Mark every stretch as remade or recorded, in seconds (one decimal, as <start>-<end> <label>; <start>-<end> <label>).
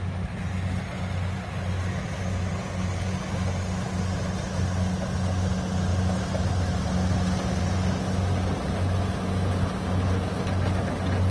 0.0-11.3 recorded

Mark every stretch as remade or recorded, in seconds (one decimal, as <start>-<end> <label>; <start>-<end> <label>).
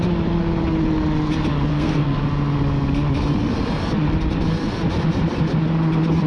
0.0-1.7 recorded; 1.7-2.2 remade; 2.2-6.3 recorded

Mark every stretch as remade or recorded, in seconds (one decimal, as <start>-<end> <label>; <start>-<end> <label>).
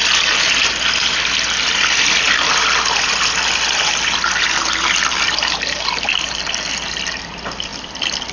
0.0-8.3 recorded